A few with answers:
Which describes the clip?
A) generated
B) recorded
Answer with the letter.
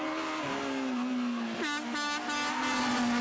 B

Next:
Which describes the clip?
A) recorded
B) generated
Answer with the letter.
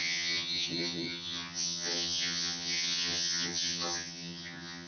B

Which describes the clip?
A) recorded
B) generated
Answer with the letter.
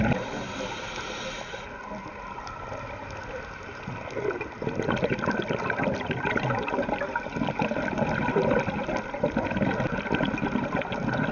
A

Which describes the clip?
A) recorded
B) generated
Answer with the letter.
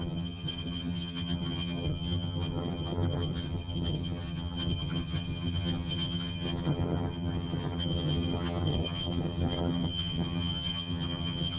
B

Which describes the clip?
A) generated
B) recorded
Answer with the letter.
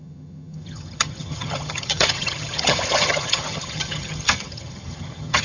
A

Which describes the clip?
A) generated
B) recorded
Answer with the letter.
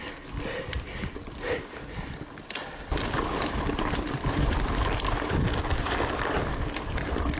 B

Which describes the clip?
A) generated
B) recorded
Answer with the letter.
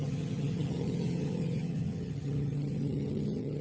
A